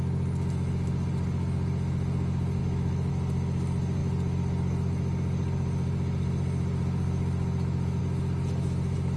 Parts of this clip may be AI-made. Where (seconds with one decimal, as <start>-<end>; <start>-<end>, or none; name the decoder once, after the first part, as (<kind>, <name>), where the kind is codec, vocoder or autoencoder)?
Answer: 2.6-3.1 (autoencoder, DAC-VAE)